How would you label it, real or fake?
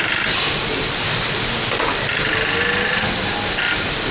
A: real